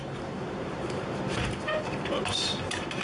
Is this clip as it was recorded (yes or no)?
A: no